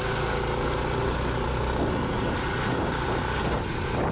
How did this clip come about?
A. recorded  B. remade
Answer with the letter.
A